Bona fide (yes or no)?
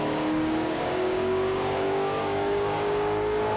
no